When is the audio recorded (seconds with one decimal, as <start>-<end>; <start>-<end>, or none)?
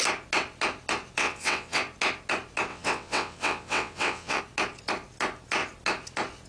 0.0-1.2; 1.8-2.7; 4.4-6.5